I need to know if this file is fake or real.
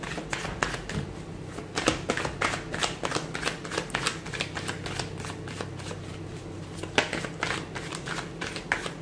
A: real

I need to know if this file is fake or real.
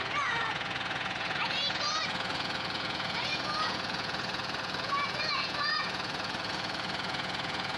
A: fake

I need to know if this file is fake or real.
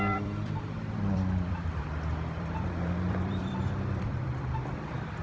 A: fake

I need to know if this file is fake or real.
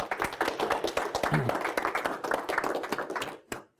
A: real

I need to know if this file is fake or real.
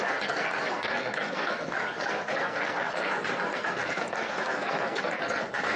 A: fake